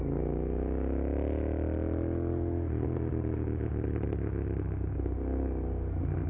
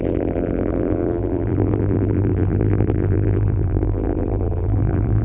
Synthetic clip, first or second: second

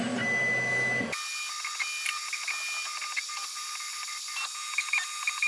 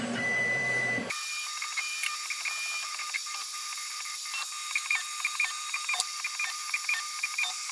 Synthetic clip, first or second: second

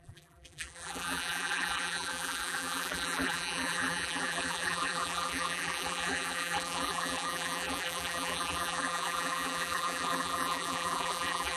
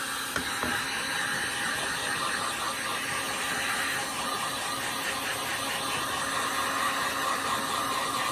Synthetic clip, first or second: first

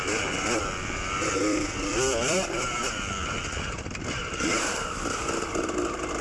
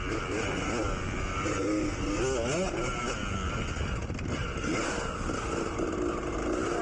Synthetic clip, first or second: first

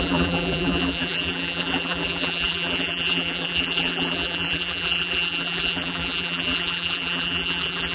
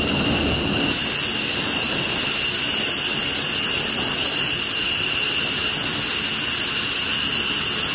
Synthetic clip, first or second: first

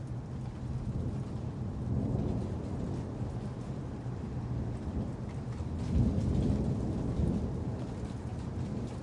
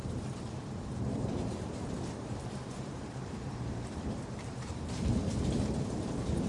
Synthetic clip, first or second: second